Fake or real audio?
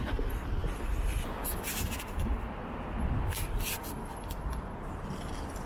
real